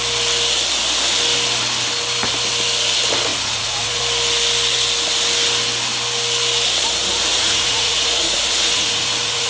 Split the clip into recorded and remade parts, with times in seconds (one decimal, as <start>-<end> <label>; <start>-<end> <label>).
0.0-3.3 recorded; 3.3-4.0 remade; 4.0-7.3 recorded; 7.3-9.5 remade

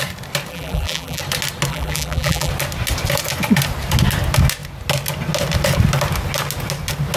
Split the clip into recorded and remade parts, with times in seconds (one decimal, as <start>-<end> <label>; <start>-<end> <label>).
0.0-0.5 recorded; 0.5-1.2 remade; 1.2-1.7 recorded; 1.7-2.5 remade; 2.5-7.2 recorded

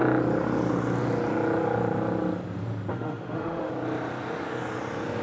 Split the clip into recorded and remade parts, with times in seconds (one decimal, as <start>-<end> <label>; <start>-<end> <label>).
0.0-2.9 recorded; 2.9-3.7 remade; 3.7-5.2 recorded

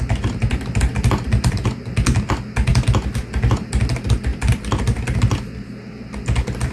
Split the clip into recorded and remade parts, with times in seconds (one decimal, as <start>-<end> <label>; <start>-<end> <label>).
0.0-6.7 recorded

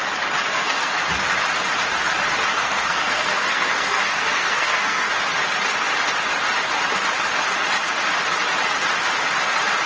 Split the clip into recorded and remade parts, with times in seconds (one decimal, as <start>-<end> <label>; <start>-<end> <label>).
0.0-0.5 recorded; 0.5-1.0 remade; 1.0-2.5 recorded; 2.5-5.1 remade; 5.1-9.9 recorded

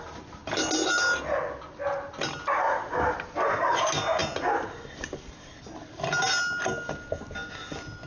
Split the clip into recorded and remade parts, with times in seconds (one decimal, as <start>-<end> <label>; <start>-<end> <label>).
0.0-8.1 recorded

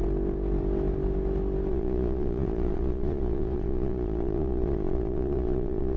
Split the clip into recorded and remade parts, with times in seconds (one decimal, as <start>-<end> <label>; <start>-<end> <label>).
0.0-1.7 recorded; 1.7-6.0 remade

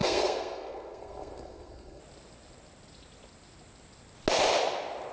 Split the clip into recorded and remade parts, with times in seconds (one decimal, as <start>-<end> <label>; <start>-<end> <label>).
0.0-2.0 remade; 2.0-5.1 recorded